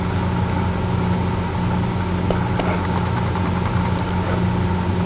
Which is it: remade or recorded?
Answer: recorded